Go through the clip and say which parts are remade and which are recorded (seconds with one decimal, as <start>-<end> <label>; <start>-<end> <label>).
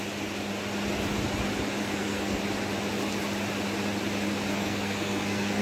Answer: 0.0-1.8 recorded; 1.8-2.4 remade; 2.4-4.5 recorded; 4.5-5.6 remade